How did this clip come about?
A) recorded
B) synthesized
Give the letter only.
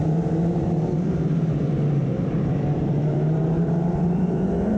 B